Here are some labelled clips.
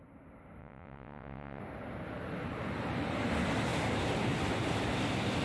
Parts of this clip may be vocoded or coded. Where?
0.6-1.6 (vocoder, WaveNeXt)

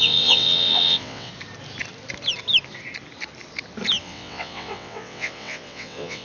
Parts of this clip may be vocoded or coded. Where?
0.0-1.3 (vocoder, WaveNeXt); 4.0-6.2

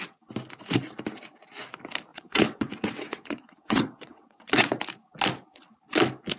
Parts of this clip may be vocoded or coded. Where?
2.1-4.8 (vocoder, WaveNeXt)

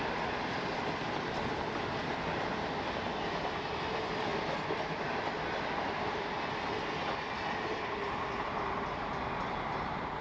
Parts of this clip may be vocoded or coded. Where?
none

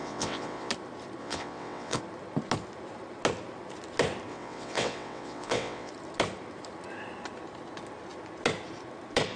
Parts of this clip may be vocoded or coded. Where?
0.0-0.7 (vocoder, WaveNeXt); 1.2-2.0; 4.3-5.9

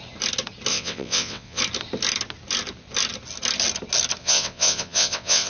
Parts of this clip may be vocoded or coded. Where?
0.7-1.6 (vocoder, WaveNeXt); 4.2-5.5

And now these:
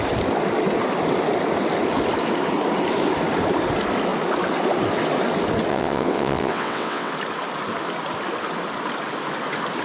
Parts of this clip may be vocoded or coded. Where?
5.7-7.1 (vocoder, WaveNeXt)